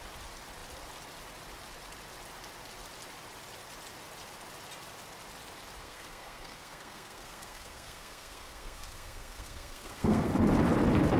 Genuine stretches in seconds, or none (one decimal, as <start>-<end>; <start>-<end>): 0.0-5.8; 10.3-11.2